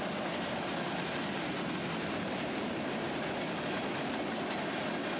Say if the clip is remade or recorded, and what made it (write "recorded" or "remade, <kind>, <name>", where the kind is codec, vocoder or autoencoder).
recorded